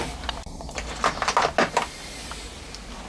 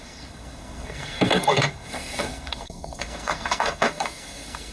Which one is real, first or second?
first